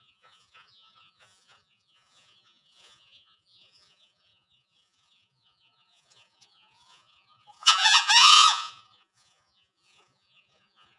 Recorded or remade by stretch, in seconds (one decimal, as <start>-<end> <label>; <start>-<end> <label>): 0.0-11.0 remade